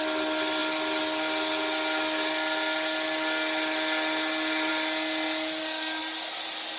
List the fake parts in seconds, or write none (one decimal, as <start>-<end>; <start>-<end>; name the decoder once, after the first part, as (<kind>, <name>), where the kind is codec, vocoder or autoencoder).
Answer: none